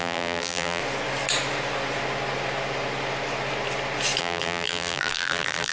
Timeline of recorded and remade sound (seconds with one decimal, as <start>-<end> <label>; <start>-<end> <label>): 0.0-0.8 remade; 0.8-4.2 recorded; 4.2-5.7 remade